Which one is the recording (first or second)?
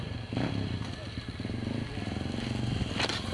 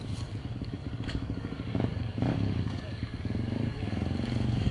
first